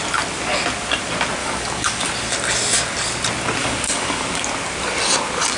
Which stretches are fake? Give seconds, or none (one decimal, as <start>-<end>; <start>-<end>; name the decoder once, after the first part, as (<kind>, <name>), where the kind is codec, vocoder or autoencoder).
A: 1.4-2.1 (codec, DAC); 3.6-4.4